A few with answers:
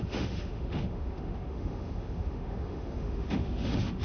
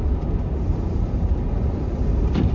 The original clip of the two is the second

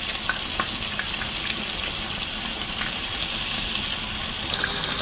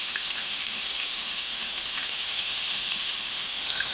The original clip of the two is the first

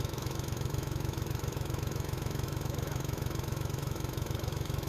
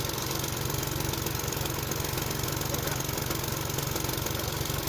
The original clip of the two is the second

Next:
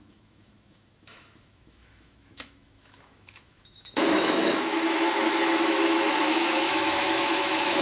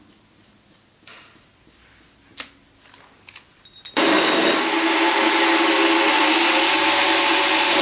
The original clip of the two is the second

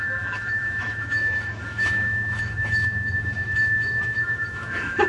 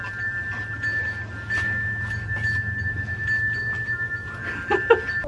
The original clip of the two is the second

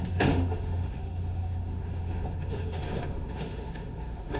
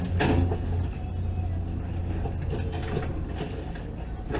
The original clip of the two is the second